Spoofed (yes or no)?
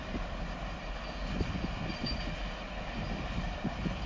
no